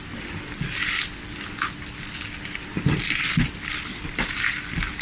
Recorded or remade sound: recorded